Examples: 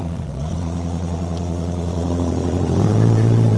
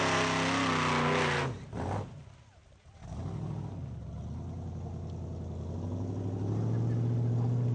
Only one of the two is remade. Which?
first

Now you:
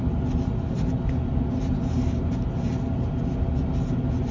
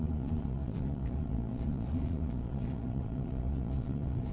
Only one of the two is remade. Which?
second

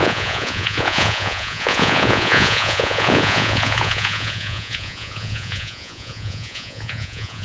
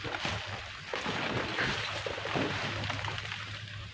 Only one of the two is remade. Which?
first